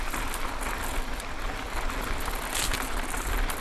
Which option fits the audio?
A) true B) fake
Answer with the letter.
A